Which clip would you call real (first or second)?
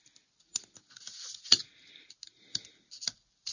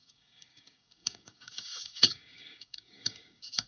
first